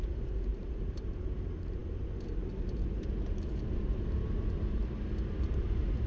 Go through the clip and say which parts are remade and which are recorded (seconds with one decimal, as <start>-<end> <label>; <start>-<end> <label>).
0.0-4.8 remade; 4.8-5.3 recorded; 5.3-6.1 remade